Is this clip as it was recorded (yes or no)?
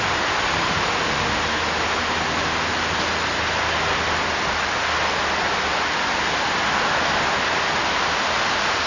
yes